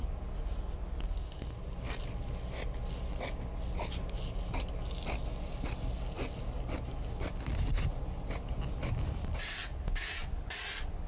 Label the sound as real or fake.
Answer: real